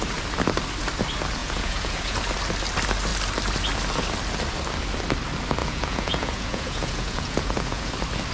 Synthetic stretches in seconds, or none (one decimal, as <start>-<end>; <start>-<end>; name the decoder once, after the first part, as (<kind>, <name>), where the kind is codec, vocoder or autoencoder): 1.4-2.2 (vocoder, Vocos); 5.6-7.9